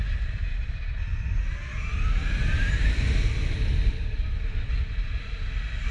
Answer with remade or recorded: recorded